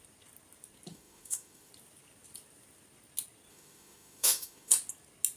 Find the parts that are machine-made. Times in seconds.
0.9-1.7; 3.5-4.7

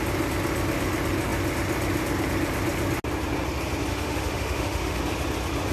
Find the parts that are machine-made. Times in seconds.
3.9-5.0

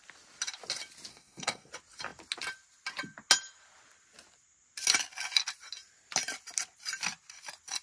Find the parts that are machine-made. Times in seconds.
1.1-1.7

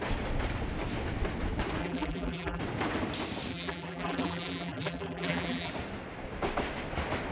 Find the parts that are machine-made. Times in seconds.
1.8-2.6; 3.5-5.7

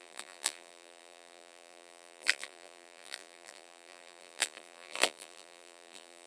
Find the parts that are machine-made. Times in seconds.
0.0-6.3

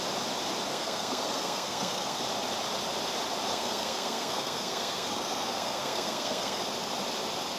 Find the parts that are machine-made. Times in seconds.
0.7-2.2; 3.5-6.6